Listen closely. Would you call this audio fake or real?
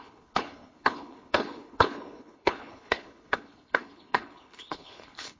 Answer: fake